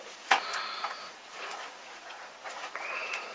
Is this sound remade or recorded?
remade